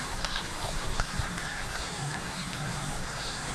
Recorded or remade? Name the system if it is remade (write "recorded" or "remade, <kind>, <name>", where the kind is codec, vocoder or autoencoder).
remade, codec, SNAC